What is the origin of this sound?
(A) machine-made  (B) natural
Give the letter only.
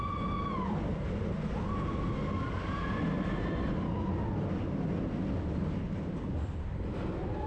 B